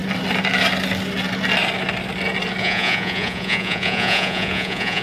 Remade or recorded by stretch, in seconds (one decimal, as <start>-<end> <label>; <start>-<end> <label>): 0.0-2.6 recorded; 2.6-5.0 remade